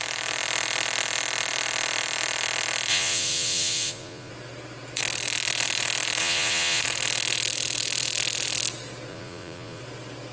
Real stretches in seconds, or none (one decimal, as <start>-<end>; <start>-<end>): 0.0-2.9; 4.3-6.2; 6.8-9.1; 9.8-10.3